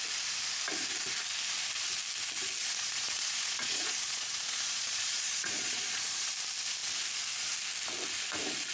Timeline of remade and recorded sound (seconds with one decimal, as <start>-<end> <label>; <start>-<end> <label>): 0.0-2.6 recorded; 2.6-6.3 remade; 6.3-8.7 recorded